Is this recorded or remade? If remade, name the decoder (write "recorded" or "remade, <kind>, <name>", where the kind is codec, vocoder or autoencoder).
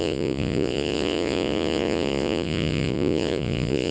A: remade, vocoder, Vocos